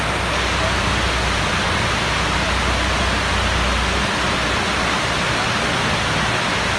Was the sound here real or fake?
real